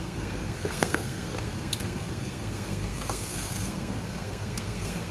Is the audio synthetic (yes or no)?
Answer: yes